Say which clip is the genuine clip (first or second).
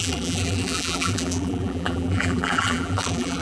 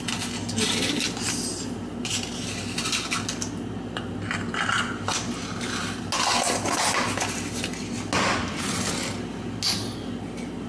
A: second